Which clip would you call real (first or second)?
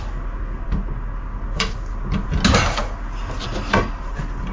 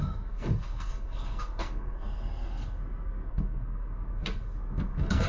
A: first